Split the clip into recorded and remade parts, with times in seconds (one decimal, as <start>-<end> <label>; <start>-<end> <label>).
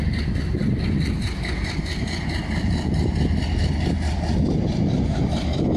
0.0-5.8 recorded